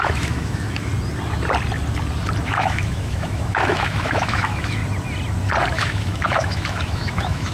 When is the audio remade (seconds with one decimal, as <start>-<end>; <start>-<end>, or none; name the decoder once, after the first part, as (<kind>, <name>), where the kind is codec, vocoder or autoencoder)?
0.0-0.9 (autoencoder, DAC-VAE); 2.4-4.8; 5.7-7.5